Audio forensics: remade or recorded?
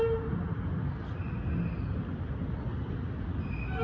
recorded